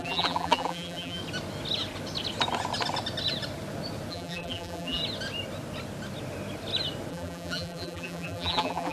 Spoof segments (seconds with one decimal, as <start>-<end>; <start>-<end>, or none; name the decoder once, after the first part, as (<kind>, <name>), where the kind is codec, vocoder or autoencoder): 0.0-1.2 (vocoder, BigVGAN v2); 4.1-5.0; 7.1-8.9